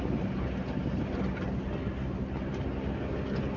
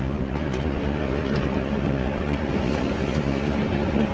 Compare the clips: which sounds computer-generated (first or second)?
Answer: second